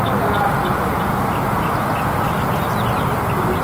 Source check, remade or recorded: recorded